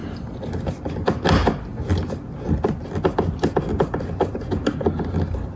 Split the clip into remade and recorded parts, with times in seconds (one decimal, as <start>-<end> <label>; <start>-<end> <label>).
0.0-0.5 remade; 0.5-5.6 recorded